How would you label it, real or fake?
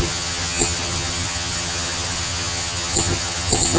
fake